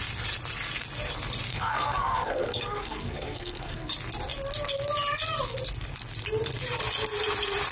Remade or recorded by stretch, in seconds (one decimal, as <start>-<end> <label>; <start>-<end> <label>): 0.0-1.5 recorded; 1.5-3.9 remade; 3.9-7.7 recorded

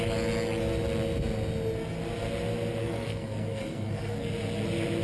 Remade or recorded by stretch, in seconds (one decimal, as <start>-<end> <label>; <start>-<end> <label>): 0.0-2.8 recorded; 2.8-4.3 remade; 4.3-5.0 recorded

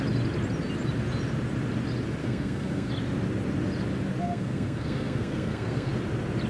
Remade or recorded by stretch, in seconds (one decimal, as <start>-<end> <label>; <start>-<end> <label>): 0.0-2.2 recorded; 2.2-2.9 remade; 2.9-4.2 recorded; 4.2-5.9 remade; 5.9-6.5 recorded

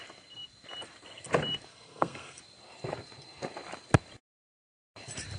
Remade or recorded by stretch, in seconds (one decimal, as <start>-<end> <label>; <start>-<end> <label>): 0.0-1.7 recorded; 1.7-2.4 remade; 2.4-5.4 recorded

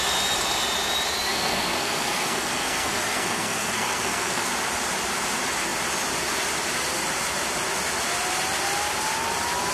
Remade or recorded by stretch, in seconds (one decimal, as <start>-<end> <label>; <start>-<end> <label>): 0.0-1.3 recorded; 1.3-4.5 remade; 4.5-9.7 recorded

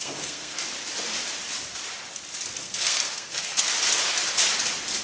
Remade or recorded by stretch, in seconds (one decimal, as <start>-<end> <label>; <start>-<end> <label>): 0.0-0.6 remade; 0.6-2.6 recorded; 2.6-3.7 remade; 3.7-5.0 recorded

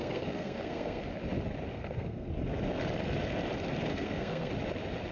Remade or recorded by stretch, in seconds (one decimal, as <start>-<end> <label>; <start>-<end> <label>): 0.0-1.0 remade; 1.0-1.7 recorded; 1.7-2.3 remade; 2.3-3.9 recorded; 3.9-4.5 remade; 4.5-5.1 recorded

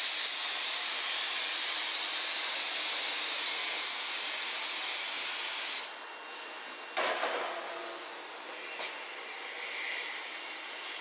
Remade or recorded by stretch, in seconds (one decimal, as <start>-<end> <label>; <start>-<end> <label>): 0.0-3.6 recorded; 3.6-4.1 remade; 4.1-11.0 recorded